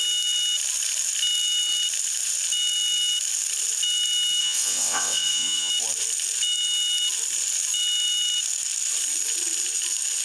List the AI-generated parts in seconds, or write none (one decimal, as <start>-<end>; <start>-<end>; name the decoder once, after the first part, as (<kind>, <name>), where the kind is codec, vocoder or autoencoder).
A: 4.4-5.7 (vocoder, WaveNeXt)